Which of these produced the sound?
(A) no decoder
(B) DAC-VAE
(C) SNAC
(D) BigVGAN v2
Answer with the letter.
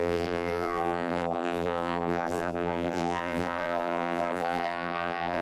D